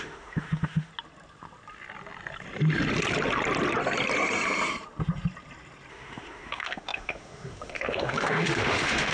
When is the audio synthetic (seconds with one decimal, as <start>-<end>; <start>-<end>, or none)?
0.0-0.9; 5.9-9.1